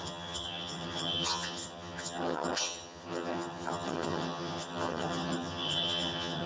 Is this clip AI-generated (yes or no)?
yes